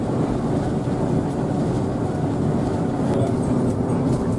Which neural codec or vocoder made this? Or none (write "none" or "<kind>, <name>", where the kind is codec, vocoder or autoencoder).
none